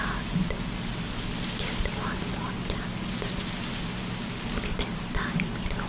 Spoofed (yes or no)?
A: no